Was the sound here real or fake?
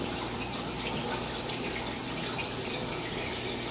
real